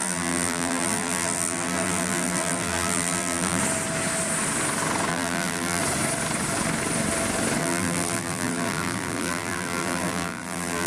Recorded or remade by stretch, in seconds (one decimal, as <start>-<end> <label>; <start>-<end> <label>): 0.0-3.6 remade; 3.6-5.1 recorded; 5.1-5.8 remade; 5.8-7.6 recorded; 7.6-10.9 remade